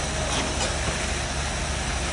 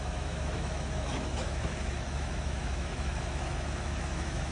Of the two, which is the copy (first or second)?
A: second